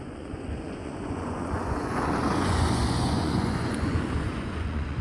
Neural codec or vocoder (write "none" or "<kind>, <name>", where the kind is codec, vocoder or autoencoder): vocoder, Vocos